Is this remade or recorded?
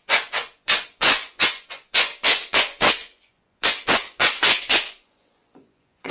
remade